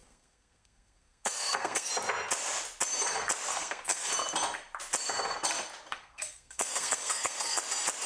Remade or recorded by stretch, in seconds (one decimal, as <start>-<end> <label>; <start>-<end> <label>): 0.0-1.9 remade; 1.9-3.5 recorded; 3.5-4.1 remade; 4.1-5.9 recorded; 5.9-7.6 remade; 7.6-8.1 recorded